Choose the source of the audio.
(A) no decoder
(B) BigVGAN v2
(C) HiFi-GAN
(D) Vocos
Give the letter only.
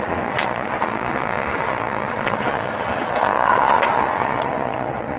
D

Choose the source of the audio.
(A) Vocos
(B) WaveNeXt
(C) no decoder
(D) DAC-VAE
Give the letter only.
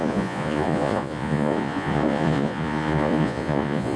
A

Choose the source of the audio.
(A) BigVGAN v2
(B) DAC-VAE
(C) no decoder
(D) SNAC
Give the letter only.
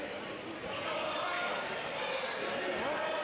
C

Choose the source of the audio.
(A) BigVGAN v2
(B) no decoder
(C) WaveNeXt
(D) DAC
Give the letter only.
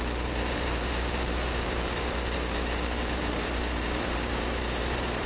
A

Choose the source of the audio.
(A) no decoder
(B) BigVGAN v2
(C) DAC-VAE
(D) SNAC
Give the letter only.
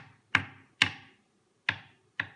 A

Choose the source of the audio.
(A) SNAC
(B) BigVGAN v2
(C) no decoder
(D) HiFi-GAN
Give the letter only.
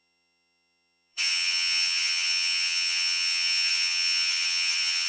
D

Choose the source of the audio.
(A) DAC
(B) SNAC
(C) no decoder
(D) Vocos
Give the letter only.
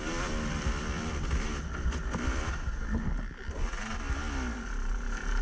C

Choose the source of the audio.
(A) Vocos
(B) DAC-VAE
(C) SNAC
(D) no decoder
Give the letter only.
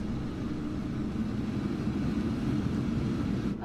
D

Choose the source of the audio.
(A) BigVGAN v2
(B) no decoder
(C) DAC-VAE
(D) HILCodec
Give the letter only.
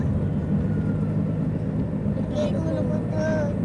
B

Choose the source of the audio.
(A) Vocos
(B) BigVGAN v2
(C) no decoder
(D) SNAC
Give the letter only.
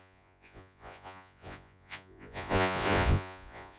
A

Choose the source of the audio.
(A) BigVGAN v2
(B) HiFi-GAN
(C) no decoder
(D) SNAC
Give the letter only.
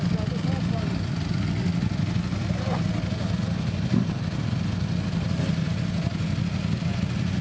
C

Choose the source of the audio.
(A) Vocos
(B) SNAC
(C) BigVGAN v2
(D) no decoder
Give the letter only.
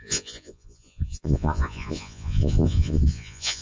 A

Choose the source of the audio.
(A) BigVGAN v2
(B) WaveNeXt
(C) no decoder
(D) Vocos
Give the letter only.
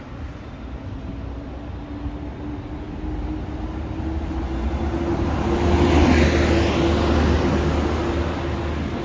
C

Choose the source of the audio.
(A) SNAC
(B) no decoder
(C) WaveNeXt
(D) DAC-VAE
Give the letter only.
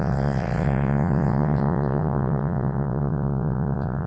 C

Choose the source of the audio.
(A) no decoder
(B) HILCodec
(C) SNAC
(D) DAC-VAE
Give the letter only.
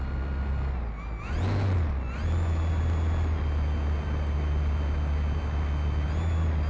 A